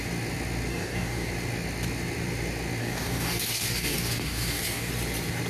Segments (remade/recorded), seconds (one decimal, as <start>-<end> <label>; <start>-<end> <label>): 0.0-0.7 recorded; 0.7-1.3 remade; 1.3-2.8 recorded; 2.8-4.9 remade; 4.9-5.5 recorded

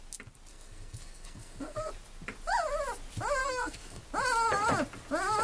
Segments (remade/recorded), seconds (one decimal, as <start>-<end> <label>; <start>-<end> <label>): 0.0-0.5 recorded; 0.5-1.9 remade; 1.9-3.4 recorded; 3.4-4.0 remade; 4.0-5.4 recorded